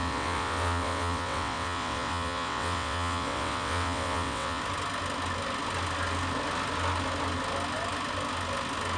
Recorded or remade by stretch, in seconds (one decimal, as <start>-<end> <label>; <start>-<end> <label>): 0.0-4.6 remade; 4.6-9.0 recorded